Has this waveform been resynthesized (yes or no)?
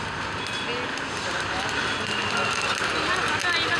no